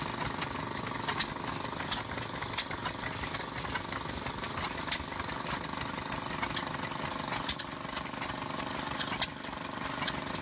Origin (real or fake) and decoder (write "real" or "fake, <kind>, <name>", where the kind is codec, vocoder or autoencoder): real